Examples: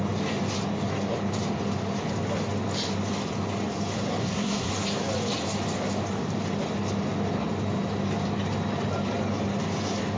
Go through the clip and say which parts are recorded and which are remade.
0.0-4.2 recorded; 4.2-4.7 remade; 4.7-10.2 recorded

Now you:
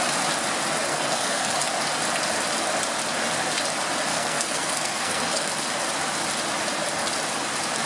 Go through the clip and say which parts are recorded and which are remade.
0.0-0.9 recorded; 0.9-1.5 remade; 1.5-4.1 recorded; 4.1-5.5 remade; 5.5-7.9 recorded

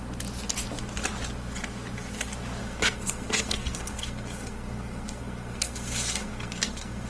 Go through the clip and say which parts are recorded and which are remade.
0.0-2.6 recorded; 2.6-7.1 remade

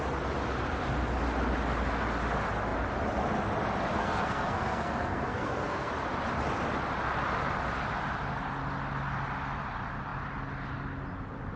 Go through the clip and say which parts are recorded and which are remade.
0.0-4.0 recorded; 4.0-5.9 remade; 5.9-11.6 recorded

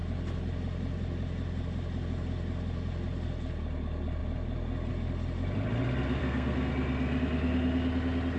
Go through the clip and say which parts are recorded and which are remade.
0.0-6.2 recorded; 6.2-6.7 remade; 6.7-8.4 recorded

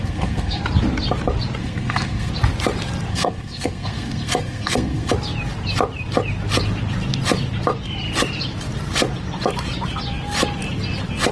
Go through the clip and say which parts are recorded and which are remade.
0.0-0.6 remade; 0.6-1.6 recorded; 1.6-2.3 remade; 2.3-3.1 recorded; 3.1-5.1 remade; 5.1-11.3 recorded

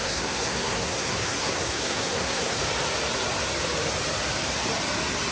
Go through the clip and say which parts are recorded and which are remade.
0.0-2.6 remade; 2.6-5.3 recorded

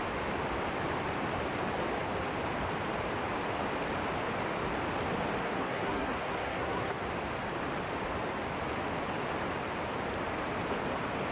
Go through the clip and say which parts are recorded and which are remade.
0.0-5.4 recorded; 5.4-7.0 remade; 7.0-11.3 recorded